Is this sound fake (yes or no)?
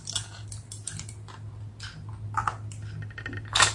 no